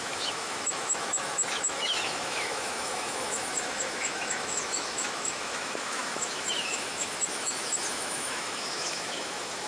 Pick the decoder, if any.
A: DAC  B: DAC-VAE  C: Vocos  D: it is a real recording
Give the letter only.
B